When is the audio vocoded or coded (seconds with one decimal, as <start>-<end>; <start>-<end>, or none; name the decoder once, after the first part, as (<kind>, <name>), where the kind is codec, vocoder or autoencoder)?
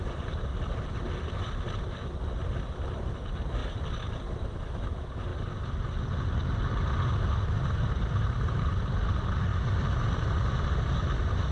0.0-0.5 (vocoder, BigVGAN v2); 2.9-5.3; 7.8-9.5; 10.7-11.5